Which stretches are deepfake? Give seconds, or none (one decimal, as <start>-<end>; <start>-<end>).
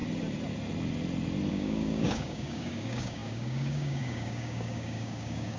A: 1.5-5.6